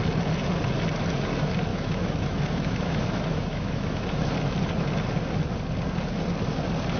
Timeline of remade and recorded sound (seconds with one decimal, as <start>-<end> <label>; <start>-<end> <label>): 0.0-1.7 recorded; 1.7-4.3 remade; 4.3-7.0 recorded